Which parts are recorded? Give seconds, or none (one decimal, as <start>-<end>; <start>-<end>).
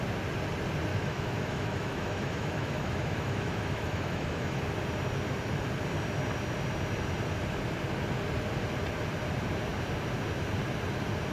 0.0-0.9; 4.6-11.3